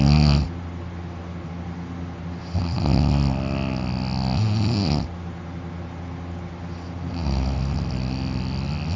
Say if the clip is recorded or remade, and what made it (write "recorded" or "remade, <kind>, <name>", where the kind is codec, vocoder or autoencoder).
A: recorded